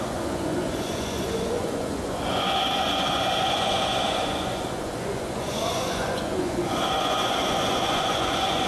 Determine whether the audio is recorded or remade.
remade